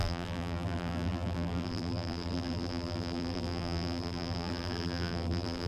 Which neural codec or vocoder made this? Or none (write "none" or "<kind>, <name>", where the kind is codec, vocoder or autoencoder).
vocoder, BigVGAN v2